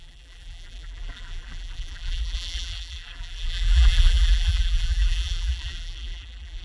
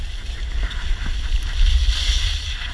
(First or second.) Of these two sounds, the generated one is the first